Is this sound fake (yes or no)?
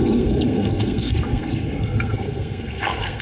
yes